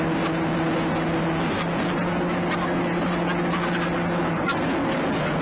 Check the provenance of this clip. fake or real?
real